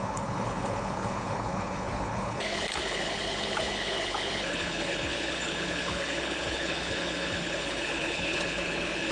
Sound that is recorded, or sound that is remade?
remade